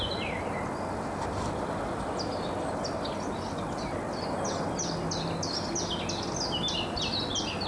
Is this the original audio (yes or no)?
yes